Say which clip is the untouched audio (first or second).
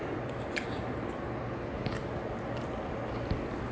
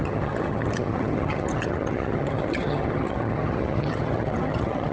first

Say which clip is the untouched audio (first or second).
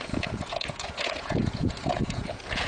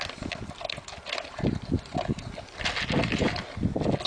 second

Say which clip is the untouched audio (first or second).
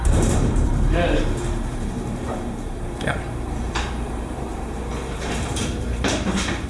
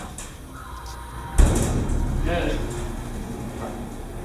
second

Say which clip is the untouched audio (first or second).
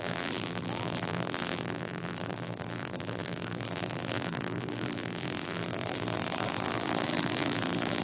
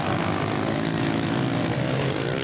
second